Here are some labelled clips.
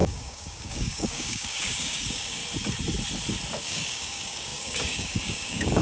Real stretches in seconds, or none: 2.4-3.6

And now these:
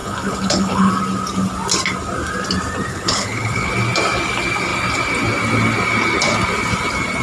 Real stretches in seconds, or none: 0.9-2.9; 3.7-7.2

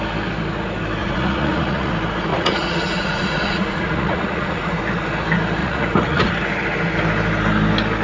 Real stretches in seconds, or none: 0.0-1.0; 1.9-2.3; 4.8-5.6; 6.3-8.0

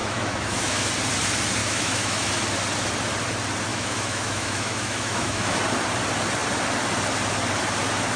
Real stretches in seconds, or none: 0.9-1.6; 2.3-3.7; 5.6-8.2

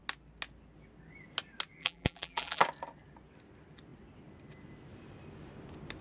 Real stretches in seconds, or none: 0.0-1.8; 2.6-6.0

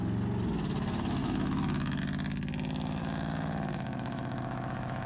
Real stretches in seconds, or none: 0.0-1.2; 2.0-3.0

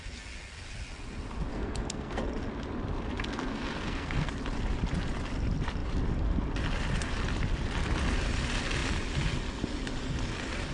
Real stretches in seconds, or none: 0.0-1.5; 2.2-3.5; 4.3-10.7

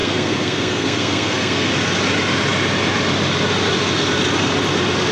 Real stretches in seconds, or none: 1.7-5.1